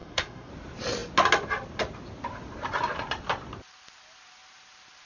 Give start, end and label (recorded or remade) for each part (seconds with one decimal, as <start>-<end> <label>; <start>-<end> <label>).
0.0-0.5 remade; 0.5-5.1 recorded